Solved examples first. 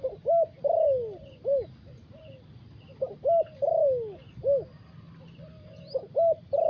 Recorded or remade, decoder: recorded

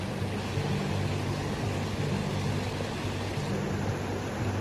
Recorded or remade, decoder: recorded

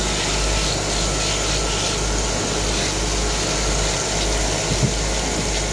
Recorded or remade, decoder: recorded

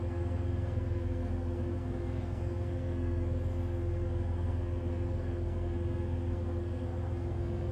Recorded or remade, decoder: remade, codec, SNAC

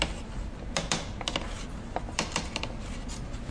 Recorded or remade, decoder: recorded